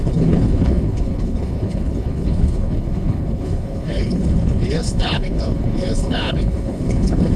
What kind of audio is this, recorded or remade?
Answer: remade